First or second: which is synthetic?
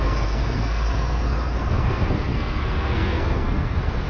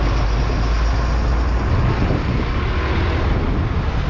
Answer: first